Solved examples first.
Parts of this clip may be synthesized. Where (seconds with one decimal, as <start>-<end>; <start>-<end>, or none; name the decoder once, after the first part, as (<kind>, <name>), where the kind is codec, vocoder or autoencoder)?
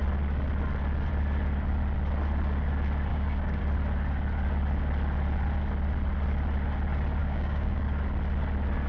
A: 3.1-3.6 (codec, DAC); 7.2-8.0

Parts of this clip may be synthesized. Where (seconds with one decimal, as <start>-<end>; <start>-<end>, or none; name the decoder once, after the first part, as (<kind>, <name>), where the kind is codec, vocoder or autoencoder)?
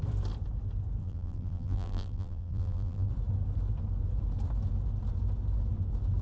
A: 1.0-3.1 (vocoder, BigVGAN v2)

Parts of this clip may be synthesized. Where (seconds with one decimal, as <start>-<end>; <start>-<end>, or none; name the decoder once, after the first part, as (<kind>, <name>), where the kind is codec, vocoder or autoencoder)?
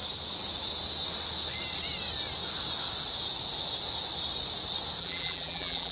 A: 5.0-5.9 (vocoder, BigVGAN v2)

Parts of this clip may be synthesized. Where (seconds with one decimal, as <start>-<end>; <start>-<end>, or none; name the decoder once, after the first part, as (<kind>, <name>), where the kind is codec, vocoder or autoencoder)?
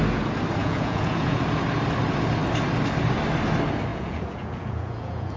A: 0.6-1.4 (vocoder, Vocos); 3.9-5.4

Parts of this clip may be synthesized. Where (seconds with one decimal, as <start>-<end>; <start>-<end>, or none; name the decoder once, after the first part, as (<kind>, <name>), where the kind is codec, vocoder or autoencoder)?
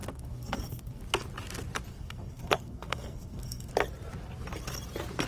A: 0.0-1.0 (codec, SNAC); 1.9-3.7